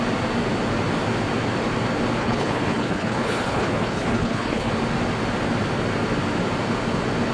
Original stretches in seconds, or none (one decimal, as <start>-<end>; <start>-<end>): 0.0-2.2; 4.7-7.3